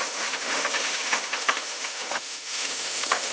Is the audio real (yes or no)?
no